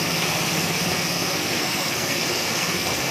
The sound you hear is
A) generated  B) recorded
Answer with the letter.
A